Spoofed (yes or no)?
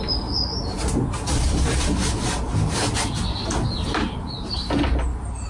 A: no